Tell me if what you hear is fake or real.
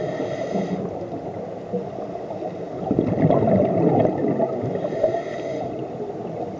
real